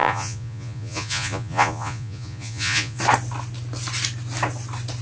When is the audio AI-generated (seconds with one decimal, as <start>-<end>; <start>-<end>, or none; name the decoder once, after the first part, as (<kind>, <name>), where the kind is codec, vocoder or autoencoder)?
0.0-3.0 (vocoder, Vocos)